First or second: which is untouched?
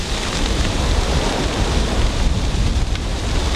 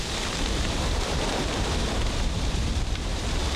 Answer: first